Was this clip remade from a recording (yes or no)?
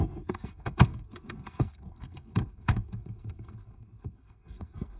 yes